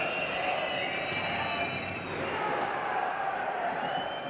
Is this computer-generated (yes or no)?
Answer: no